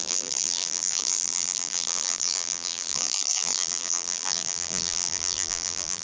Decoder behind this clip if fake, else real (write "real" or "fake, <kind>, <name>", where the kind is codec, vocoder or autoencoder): fake, vocoder, BigVGAN v2